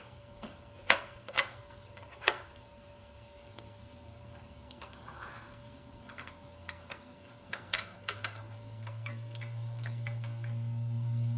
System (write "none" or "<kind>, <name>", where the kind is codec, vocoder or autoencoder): codec, SNAC